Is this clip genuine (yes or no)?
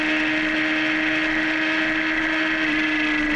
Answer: yes